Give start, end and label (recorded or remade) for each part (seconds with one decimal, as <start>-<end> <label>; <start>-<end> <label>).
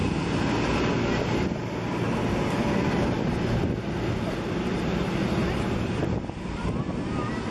0.0-4.5 recorded; 4.5-5.4 remade; 5.4-7.5 recorded